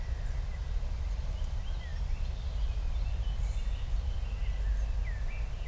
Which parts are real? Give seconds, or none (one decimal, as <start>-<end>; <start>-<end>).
0.0-5.7